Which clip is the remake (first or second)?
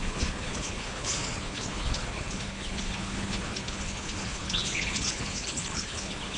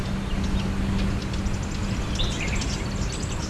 first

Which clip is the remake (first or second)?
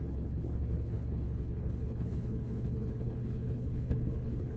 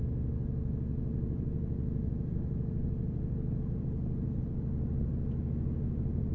first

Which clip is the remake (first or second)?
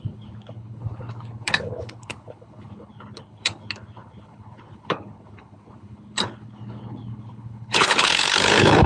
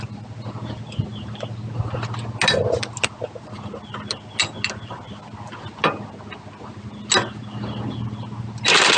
first